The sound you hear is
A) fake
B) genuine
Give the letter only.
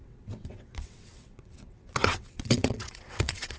A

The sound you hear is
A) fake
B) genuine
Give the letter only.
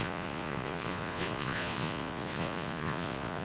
A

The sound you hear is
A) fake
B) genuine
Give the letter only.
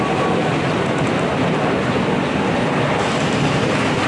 B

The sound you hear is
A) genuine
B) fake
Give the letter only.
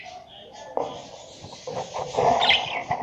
A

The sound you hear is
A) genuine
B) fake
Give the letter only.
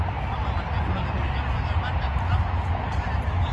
A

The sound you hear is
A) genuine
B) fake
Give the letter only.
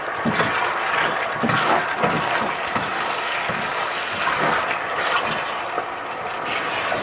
A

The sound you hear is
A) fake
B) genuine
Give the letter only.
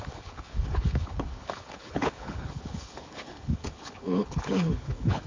A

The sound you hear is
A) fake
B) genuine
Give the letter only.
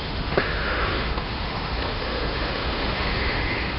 A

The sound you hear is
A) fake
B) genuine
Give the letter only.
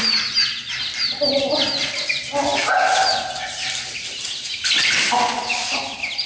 B